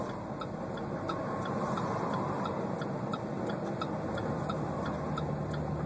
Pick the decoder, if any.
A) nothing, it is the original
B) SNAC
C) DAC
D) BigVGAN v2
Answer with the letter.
A